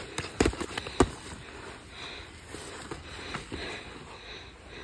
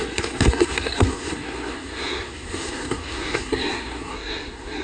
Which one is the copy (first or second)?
second